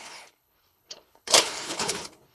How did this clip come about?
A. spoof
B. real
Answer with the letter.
A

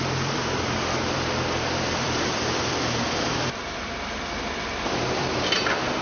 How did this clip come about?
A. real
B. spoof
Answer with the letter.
B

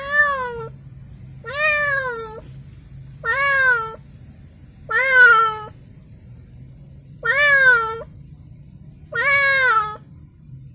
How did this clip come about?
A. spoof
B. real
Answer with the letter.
B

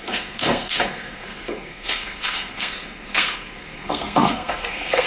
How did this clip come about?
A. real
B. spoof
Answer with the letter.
B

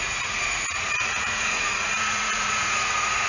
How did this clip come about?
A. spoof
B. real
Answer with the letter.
A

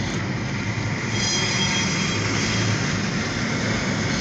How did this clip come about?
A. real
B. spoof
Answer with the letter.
A